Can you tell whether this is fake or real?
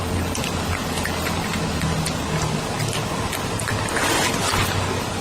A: real